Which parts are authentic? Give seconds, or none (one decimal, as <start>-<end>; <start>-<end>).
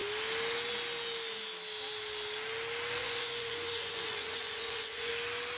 0.0-3.0; 5.1-5.6